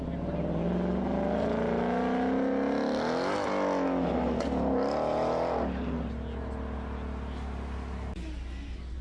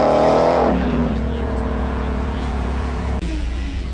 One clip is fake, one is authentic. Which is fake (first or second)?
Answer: second